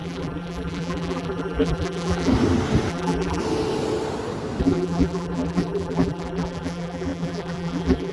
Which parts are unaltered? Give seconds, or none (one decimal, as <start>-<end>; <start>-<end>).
2.3-2.9; 3.4-4.6